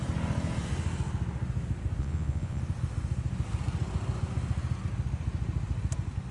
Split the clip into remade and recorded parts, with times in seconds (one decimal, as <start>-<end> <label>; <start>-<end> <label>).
0.0-2.0 recorded; 2.0-2.6 remade; 2.6-6.3 recorded